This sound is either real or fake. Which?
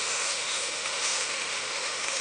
fake